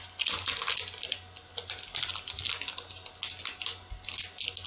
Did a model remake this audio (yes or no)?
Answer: no